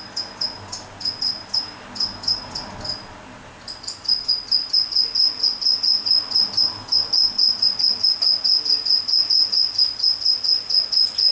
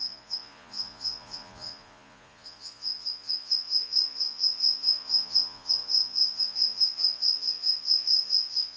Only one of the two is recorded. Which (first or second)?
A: first